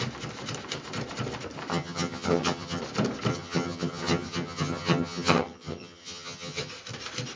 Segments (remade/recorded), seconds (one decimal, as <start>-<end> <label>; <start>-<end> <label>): 0.0-1.7 recorded; 1.7-2.8 remade; 2.8-3.3 recorded; 3.3-6.7 remade; 6.7-7.4 recorded